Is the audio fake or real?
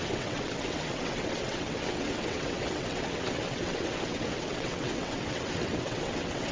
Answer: fake